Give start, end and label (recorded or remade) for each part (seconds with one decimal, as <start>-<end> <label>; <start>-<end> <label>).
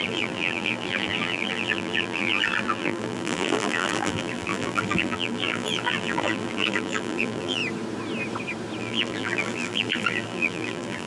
0.0-7.6 remade; 7.6-8.8 recorded; 8.8-11.1 remade